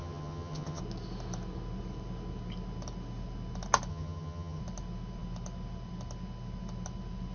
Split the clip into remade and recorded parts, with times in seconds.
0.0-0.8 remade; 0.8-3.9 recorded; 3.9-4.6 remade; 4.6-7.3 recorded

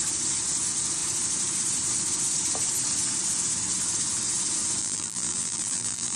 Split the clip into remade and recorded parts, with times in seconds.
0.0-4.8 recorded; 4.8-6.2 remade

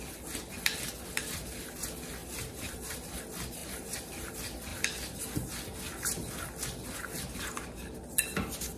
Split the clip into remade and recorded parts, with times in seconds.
0.0-2.2 recorded; 2.2-3.1 remade; 3.1-3.6 recorded; 3.6-4.3 remade; 4.3-8.8 recorded